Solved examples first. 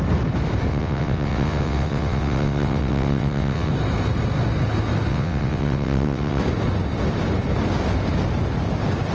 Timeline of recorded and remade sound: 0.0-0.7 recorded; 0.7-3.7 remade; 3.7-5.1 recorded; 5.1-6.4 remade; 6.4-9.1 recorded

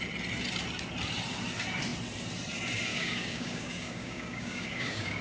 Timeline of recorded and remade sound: 0.0-2.9 recorded; 2.9-5.2 remade

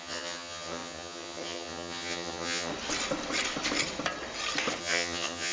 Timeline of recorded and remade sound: 0.0-2.7 remade; 2.7-4.8 recorded; 4.8-5.5 remade

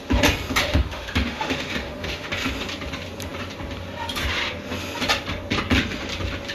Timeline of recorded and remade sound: 0.0-0.7 recorded; 0.7-2.3 remade; 2.3-6.5 recorded

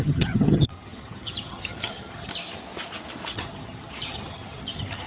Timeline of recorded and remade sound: 0.0-2.3 remade; 2.3-3.3 recorded; 3.3-5.1 remade

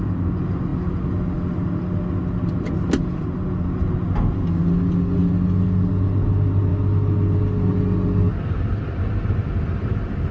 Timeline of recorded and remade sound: 0.0-10.3 recorded